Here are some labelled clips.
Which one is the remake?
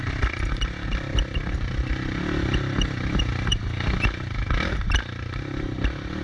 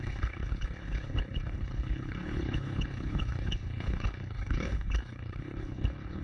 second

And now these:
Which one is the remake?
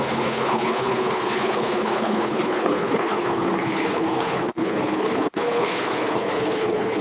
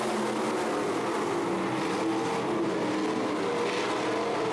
first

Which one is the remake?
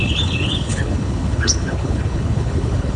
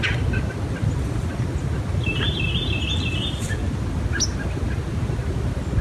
first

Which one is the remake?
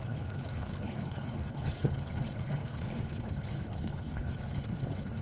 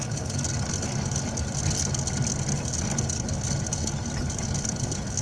first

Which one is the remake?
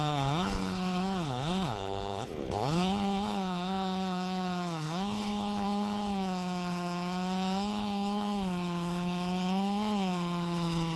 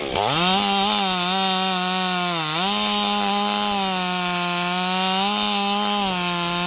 first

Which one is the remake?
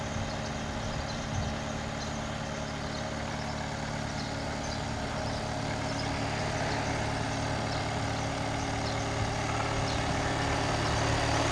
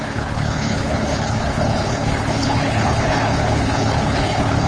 second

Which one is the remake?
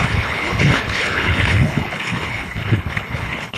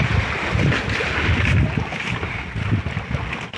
first